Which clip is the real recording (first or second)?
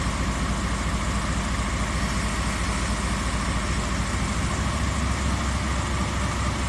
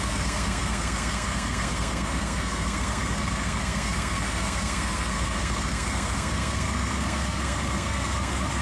first